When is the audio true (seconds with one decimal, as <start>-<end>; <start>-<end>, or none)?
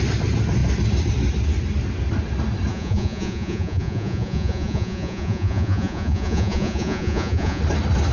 0.0-2.7; 7.6-8.1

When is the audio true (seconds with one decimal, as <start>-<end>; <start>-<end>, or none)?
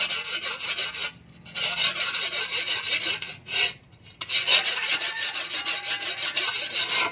0.0-1.8; 5.5-7.1